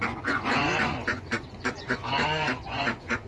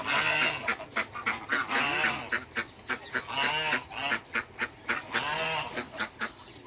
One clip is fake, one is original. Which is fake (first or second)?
first